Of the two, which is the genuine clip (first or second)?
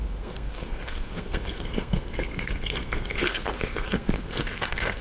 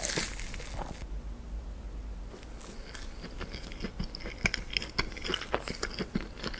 second